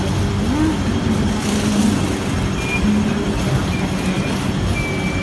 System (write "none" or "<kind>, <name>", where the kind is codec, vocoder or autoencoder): none